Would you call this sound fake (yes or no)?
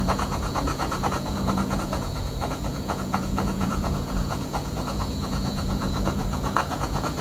yes